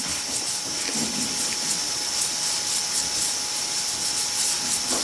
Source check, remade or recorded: recorded